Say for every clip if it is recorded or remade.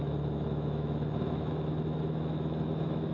remade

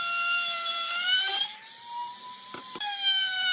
remade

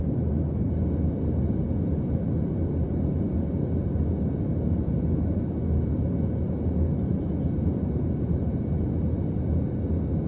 recorded